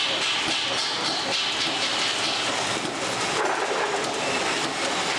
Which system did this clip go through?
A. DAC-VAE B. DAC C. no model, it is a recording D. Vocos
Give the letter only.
C